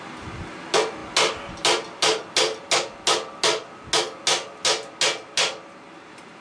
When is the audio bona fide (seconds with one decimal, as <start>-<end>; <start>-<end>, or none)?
0.0-6.4